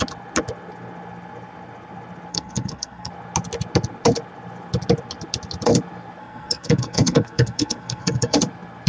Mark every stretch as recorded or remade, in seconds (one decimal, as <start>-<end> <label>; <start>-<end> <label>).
0.0-2.3 recorded; 2.3-3.1 remade; 3.1-6.2 recorded; 6.2-8.4 remade; 8.4-8.9 recorded